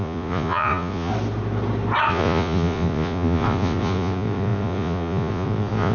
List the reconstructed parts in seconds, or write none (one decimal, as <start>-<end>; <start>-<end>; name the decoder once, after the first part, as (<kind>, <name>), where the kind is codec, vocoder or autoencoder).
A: 0.0-1.1 (vocoder, Vocos); 2.1-5.9